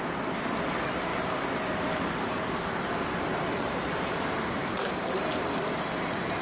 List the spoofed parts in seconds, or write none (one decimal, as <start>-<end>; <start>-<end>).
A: 1.1-4.9